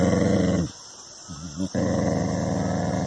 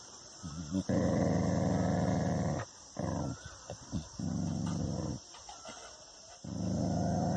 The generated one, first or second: second